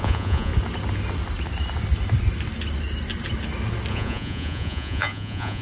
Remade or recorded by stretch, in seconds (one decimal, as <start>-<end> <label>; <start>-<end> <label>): 0.0-0.5 remade; 0.5-3.9 recorded; 3.9-5.6 remade